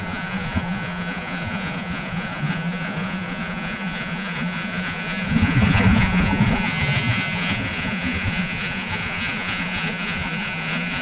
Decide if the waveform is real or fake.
fake